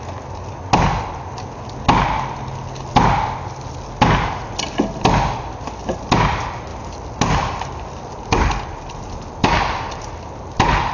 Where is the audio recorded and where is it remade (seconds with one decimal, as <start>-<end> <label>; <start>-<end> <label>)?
0.0-10.9 recorded